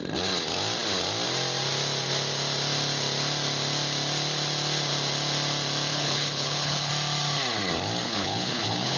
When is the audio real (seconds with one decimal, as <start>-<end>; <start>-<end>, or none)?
0.0-5.9; 6.9-8.0